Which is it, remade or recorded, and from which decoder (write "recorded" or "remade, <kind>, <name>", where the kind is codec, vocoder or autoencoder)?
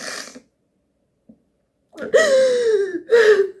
recorded